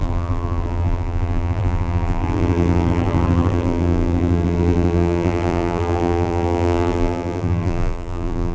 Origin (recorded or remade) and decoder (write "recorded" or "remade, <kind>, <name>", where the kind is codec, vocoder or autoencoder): remade, vocoder, BigVGAN v2